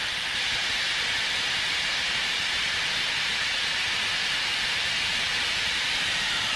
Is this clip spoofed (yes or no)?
yes